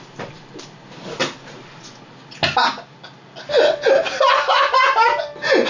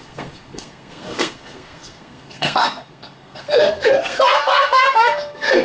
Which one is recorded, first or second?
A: first